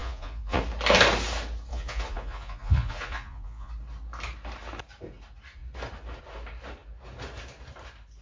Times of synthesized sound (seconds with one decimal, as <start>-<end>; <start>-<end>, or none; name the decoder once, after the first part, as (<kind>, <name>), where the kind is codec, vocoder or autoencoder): 0.0-0.6 (vocoder, Vocos); 1.7-3.7